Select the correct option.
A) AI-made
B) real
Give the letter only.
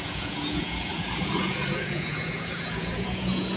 A